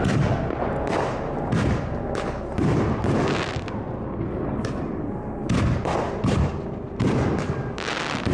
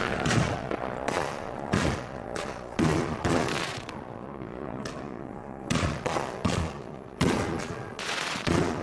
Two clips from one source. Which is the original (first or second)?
first